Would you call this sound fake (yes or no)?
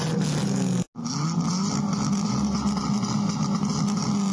no